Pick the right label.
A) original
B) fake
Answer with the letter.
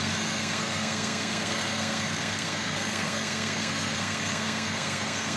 B